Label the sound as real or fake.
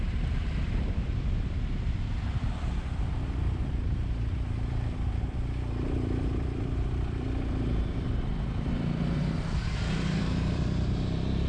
fake